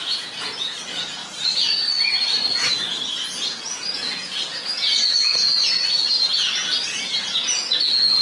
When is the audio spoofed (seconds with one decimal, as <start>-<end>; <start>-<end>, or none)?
0.0-1.2; 2.7-8.2

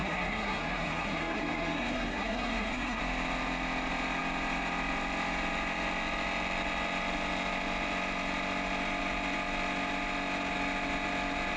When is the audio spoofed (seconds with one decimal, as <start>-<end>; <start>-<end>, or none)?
0.0-3.0

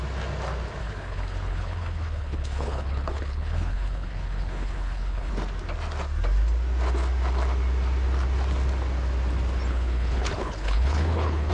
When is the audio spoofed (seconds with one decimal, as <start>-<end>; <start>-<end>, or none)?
0.8-5.3; 9.7-11.5

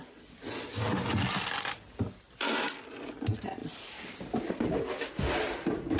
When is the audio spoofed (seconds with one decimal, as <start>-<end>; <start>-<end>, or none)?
none

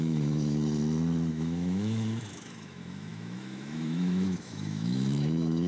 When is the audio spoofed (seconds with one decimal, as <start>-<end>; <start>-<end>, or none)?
0.0-0.6; 1.3-5.7